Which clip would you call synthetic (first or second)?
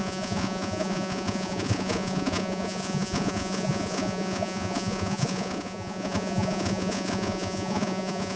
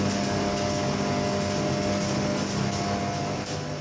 first